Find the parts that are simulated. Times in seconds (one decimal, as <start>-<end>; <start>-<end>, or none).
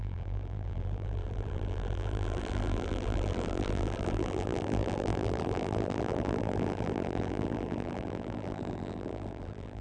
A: 0.0-9.8